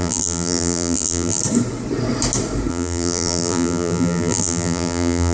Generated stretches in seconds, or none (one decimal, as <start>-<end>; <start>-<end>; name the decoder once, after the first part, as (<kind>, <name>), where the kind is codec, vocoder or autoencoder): 0.0-1.4 (vocoder, BigVGAN v2); 2.7-5.3